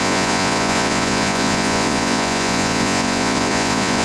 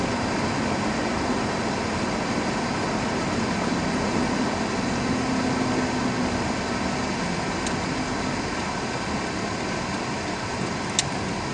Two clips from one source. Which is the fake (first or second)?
first